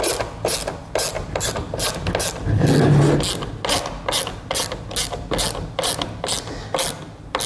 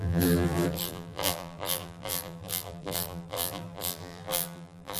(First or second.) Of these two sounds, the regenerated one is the second